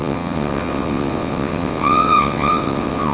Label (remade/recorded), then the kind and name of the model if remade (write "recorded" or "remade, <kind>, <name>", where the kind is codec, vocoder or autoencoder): remade, vocoder, WaveNeXt